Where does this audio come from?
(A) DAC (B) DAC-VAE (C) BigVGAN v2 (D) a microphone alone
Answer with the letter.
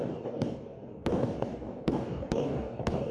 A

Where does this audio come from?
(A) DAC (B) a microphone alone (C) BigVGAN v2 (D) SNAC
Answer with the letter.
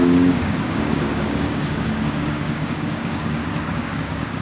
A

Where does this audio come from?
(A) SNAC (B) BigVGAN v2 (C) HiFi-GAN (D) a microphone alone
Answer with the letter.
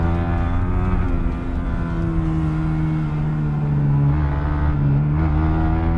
D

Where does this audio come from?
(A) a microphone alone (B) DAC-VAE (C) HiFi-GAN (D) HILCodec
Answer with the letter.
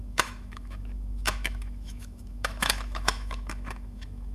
B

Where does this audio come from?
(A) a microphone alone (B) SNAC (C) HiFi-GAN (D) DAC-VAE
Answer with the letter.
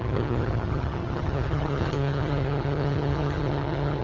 C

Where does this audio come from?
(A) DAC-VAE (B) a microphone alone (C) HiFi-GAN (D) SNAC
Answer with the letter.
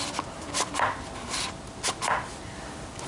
B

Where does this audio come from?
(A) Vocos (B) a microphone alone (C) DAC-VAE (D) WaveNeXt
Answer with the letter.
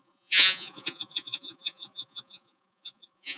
A